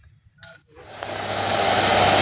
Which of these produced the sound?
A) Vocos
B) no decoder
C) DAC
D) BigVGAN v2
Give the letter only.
B